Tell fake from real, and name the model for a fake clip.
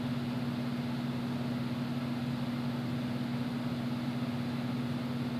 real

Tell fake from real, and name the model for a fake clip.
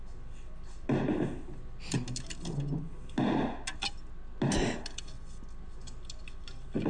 real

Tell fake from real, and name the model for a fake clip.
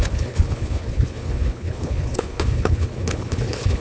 fake, codec, HILCodec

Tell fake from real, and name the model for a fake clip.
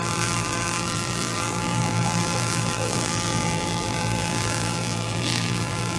fake, vocoder, BigVGAN v2